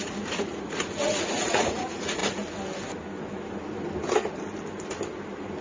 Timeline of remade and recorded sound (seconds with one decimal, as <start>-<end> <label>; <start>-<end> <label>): 0.0-2.2 remade; 2.2-5.6 recorded

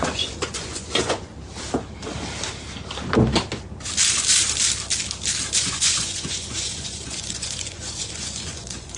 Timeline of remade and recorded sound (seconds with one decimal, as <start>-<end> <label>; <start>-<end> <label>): 0.0-1.3 remade; 1.3-5.6 recorded; 5.6-9.0 remade

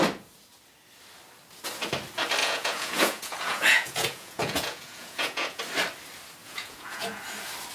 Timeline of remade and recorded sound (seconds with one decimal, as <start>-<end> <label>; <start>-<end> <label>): 0.0-2.4 recorded; 2.4-5.6 remade; 5.6-6.4 recorded; 6.4-7.2 remade; 7.2-7.7 recorded

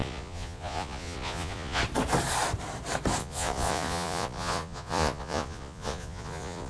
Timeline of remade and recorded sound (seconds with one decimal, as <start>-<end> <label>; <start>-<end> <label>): 0.0-1.8 remade; 1.8-3.2 recorded; 3.2-6.7 remade

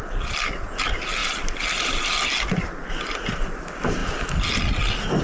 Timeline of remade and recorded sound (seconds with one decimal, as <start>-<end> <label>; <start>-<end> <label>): 0.0-5.2 recorded

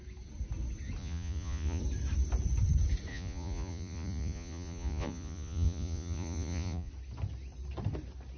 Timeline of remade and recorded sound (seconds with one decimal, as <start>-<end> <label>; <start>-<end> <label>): 0.0-1.0 recorded; 1.0-1.8 remade; 1.8-3.1 recorded; 3.1-6.9 remade; 6.9-8.4 recorded

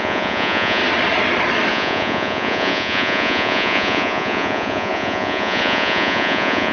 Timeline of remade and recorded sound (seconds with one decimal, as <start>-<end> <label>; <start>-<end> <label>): 0.0-0.8 remade; 0.8-1.7 recorded; 1.7-6.7 remade

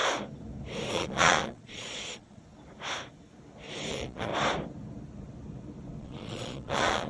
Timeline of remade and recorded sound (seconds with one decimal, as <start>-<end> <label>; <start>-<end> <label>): 0.0-0.9 recorded; 0.9-2.4 remade; 2.4-3.9 recorded; 3.9-4.3 remade; 4.3-6.0 recorded; 6.0-7.1 remade